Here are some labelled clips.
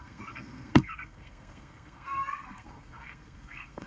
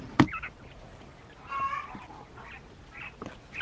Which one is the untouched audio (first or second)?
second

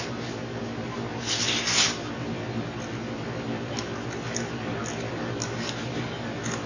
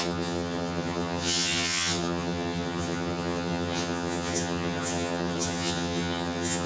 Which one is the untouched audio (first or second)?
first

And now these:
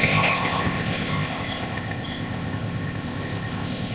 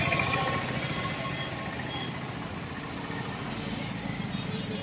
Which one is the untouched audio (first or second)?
second